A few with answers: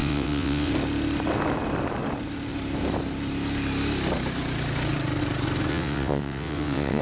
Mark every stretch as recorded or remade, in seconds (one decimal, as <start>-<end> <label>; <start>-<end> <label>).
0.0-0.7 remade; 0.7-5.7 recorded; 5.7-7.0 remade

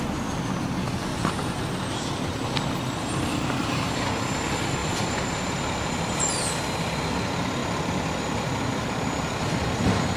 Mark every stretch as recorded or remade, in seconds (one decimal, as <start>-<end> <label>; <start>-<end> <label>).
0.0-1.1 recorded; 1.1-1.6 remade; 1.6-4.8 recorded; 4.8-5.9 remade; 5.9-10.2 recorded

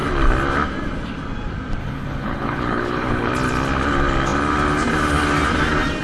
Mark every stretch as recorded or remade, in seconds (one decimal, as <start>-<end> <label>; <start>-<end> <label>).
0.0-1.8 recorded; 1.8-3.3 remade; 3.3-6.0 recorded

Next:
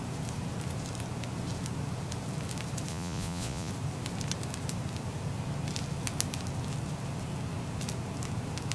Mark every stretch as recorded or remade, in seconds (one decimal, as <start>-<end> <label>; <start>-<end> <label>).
0.0-2.9 recorded; 2.9-3.7 remade; 3.7-8.7 recorded

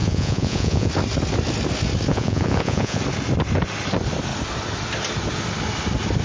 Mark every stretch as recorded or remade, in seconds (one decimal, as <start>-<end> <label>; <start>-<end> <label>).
0.0-0.9 remade; 0.9-2.1 recorded; 2.1-3.0 remade; 3.0-6.2 recorded